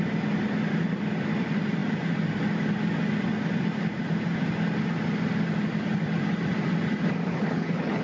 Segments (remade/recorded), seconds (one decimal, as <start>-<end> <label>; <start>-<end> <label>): 0.0-7.3 recorded; 7.3-8.0 remade